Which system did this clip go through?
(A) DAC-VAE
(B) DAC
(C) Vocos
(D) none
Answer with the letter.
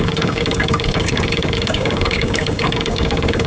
B